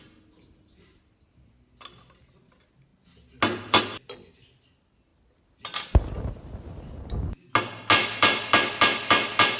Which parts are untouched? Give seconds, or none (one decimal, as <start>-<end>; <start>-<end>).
0.0-9.6